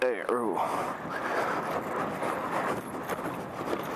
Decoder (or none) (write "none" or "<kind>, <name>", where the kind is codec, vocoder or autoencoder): none